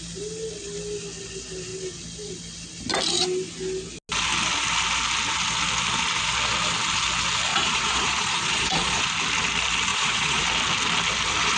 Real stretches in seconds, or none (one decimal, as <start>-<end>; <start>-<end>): 0.0-7.5; 9.0-9.9; 10.4-11.6